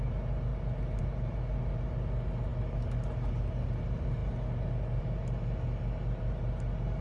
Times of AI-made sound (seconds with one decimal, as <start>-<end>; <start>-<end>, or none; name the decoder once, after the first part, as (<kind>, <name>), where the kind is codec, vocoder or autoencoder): none